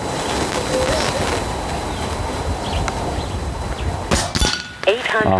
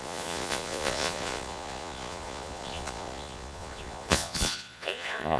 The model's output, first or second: second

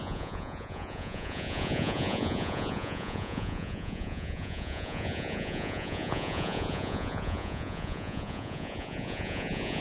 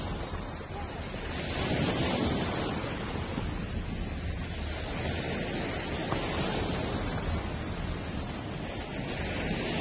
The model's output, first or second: first